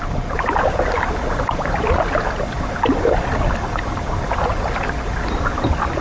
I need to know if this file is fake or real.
real